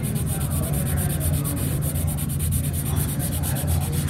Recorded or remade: recorded